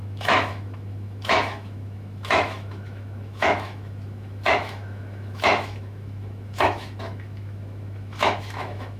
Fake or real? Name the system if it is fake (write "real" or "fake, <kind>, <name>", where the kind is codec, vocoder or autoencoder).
fake, autoencoder, DAC-VAE